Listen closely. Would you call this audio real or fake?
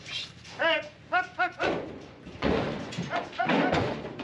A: fake